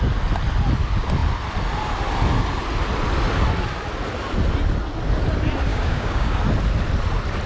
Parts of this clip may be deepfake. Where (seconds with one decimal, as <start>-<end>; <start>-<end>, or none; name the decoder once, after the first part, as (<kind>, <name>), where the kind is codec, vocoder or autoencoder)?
5.7-6.4 (codec, DAC)